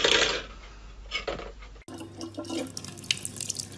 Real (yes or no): yes